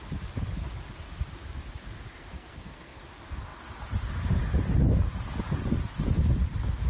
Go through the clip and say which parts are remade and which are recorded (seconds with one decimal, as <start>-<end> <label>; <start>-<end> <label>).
0.0-2.1 recorded; 2.1-3.0 remade; 3.0-6.9 recorded